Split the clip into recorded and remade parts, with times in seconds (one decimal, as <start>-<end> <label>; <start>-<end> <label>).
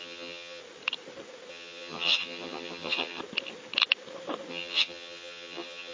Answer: 0.0-0.6 remade; 0.6-1.5 recorded; 1.5-3.2 remade; 3.2-4.5 recorded; 4.5-5.9 remade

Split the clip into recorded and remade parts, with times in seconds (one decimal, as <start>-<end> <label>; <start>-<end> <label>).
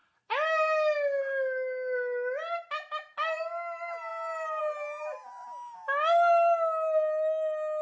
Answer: 0.0-7.8 recorded